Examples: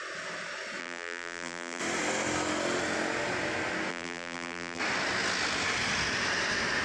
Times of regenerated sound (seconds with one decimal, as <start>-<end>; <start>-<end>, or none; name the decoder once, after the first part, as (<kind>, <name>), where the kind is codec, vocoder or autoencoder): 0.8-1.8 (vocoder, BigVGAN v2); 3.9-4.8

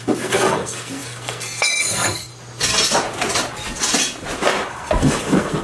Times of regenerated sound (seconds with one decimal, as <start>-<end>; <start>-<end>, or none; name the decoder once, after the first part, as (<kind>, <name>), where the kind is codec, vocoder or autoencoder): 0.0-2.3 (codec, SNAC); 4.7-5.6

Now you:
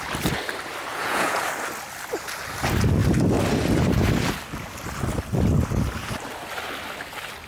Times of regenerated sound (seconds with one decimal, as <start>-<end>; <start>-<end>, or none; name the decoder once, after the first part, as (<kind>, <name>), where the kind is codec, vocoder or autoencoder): 0.9-1.4 (vocoder, Vocos)

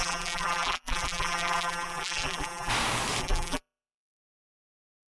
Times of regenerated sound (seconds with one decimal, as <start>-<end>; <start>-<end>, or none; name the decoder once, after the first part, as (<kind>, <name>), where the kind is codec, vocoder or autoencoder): 0.0-2.7 (vocoder, BigVGAN v2); 3.2-5.1